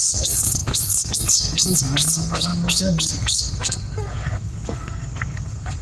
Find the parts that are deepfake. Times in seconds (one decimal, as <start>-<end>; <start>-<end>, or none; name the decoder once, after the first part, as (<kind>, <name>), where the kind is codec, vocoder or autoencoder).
0.0-5.8 (codec, SNAC)